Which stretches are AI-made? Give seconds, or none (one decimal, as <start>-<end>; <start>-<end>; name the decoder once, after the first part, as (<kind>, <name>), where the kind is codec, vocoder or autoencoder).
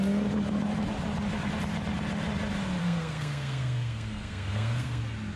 2.8-5.0 (codec, SNAC)